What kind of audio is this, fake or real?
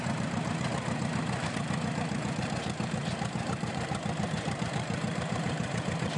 fake